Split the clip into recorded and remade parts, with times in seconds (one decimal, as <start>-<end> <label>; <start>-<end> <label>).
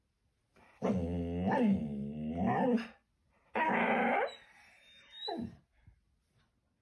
0.0-6.8 recorded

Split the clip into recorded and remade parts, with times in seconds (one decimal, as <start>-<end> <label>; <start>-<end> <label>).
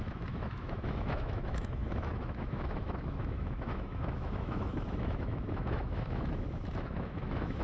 0.0-7.6 remade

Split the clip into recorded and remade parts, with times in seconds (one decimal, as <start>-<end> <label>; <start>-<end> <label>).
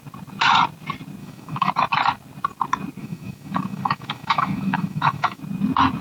0.0-1.2 recorded; 1.2-1.7 remade; 1.7-3.0 recorded; 3.0-5.4 remade; 5.4-6.0 recorded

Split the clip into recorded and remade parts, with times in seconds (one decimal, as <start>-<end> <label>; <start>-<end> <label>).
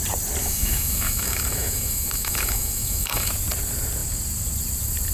0.0-0.4 recorded; 0.4-3.3 remade; 3.3-5.1 recorded